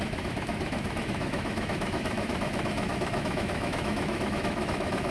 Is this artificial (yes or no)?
yes